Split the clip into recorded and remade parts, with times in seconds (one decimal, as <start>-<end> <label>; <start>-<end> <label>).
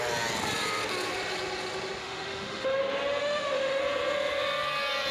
0.0-2.0 recorded; 2.0-2.8 remade; 2.8-3.2 recorded; 3.2-3.8 remade; 3.8-5.1 recorded